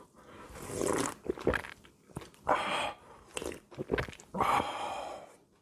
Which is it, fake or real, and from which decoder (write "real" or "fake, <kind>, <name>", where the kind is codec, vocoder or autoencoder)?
real